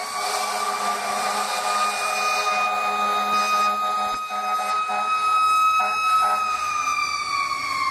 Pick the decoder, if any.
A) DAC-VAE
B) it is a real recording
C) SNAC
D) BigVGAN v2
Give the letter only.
B